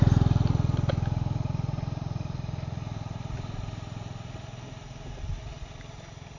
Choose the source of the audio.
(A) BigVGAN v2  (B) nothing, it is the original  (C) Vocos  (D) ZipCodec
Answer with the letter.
B